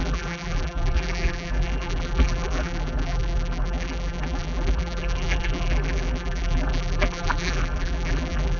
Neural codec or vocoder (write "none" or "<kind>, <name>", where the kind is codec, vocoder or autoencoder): vocoder, BigVGAN v2